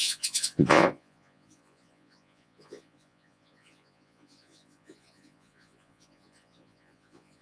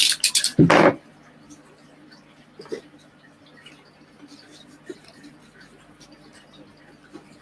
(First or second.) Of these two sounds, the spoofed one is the first